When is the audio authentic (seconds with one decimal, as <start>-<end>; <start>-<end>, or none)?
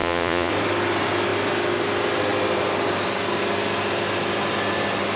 0.5-5.2